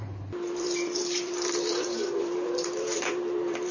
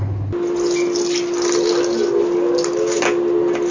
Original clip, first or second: second